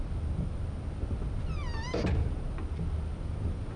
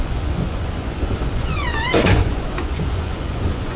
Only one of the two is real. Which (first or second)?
first